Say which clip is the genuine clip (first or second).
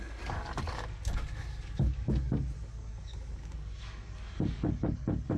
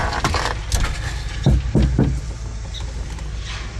second